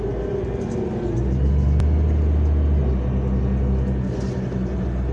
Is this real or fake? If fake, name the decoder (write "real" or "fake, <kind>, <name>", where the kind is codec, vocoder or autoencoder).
real